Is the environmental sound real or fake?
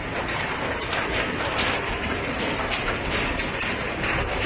fake